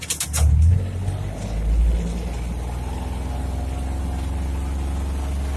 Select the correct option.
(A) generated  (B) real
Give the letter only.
B